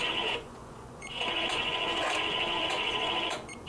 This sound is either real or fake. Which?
fake